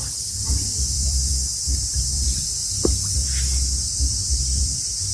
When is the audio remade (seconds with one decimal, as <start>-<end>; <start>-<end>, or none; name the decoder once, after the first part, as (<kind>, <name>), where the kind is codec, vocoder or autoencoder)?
0.0-1.3 (vocoder, BigVGAN v2); 1.9-2.6; 3.9-5.1